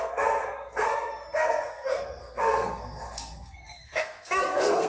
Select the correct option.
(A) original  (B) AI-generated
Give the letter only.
B